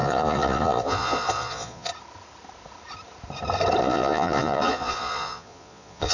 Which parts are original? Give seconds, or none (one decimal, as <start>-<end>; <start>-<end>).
1.9-3.8